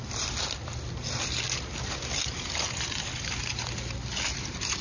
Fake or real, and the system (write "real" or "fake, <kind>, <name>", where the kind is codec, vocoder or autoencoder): real